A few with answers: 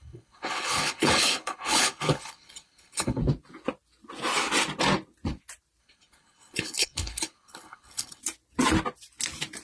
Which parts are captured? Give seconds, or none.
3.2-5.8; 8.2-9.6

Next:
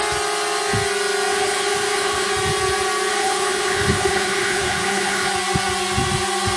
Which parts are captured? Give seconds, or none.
0.0-1.3; 2.3-3.1; 5.3-6.6